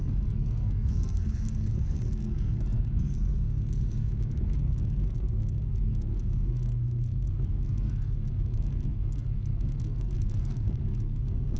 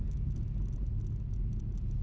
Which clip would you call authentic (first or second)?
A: second